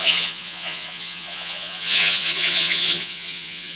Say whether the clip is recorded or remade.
remade